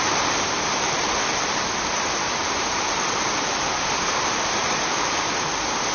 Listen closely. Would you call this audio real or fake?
fake